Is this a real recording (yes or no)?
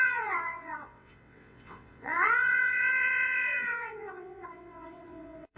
no